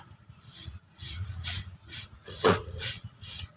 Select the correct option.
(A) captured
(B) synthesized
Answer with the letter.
B